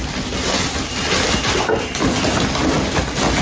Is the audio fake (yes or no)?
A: no